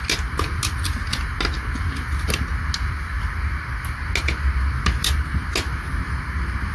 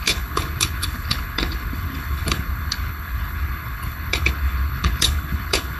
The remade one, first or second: second